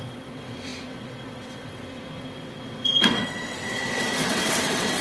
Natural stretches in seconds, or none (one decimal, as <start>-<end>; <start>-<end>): none